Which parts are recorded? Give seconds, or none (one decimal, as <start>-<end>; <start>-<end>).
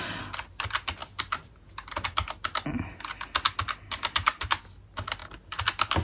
0.0-6.0